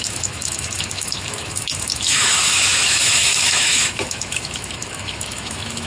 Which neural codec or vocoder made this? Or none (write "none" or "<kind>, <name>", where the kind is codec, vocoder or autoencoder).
autoencoder, DAC-VAE